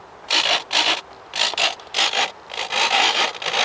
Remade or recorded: recorded